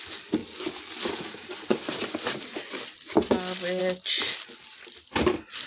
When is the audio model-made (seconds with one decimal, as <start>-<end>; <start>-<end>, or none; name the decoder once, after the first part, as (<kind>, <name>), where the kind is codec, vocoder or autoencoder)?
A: none